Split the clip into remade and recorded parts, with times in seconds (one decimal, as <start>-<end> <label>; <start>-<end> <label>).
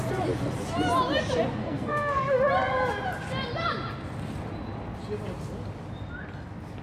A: 0.0-1.6 recorded; 1.6-2.5 remade; 2.5-6.8 recorded